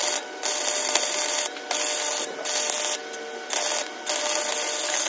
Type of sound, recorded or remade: recorded